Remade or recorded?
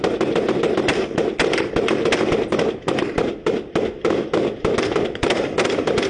recorded